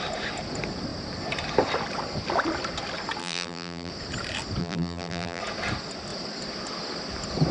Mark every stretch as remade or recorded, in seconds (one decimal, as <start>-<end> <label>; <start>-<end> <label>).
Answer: 0.0-3.2 recorded; 3.2-3.9 remade; 3.9-4.6 recorded; 4.6-5.4 remade; 5.4-7.5 recorded